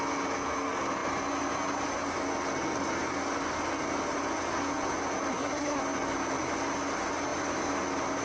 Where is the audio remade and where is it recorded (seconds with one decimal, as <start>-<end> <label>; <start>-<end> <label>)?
0.0-5.3 recorded; 5.3-5.8 remade; 5.8-8.2 recorded